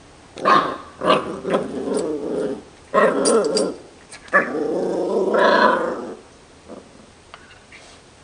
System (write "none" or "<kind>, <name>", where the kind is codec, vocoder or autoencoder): none